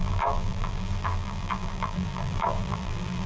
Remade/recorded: remade